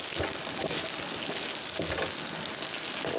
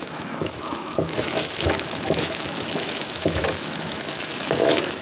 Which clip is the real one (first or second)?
first